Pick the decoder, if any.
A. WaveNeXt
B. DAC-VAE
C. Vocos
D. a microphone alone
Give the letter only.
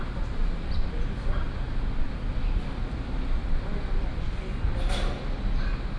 D